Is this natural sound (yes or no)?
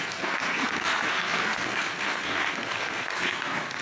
no